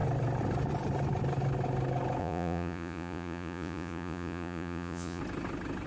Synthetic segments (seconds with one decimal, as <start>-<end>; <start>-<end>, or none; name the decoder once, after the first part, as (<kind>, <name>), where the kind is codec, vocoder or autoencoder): 2.2-5.2 (vocoder, Vocos)